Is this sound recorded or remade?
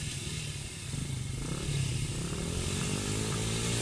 recorded